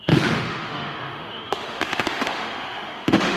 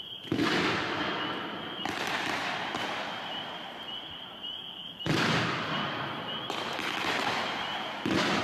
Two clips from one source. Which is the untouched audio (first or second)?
second